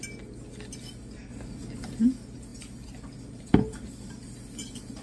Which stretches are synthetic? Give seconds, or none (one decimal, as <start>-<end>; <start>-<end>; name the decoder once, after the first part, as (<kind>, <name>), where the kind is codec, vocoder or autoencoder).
none